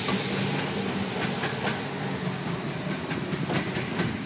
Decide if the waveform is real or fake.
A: real